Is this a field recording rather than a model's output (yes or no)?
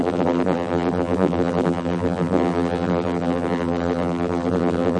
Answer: no